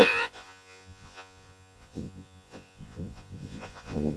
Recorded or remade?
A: remade